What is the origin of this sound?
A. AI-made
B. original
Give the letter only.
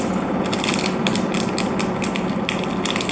B